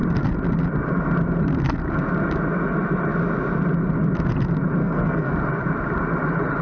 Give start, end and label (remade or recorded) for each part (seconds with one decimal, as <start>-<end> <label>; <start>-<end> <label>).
0.0-4.8 recorded; 4.8-5.3 remade; 5.3-6.6 recorded